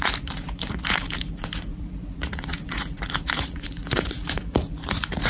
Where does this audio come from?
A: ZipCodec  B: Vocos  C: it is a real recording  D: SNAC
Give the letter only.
B